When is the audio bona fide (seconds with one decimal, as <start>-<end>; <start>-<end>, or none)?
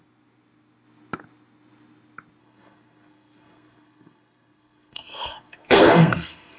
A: 0.0-2.4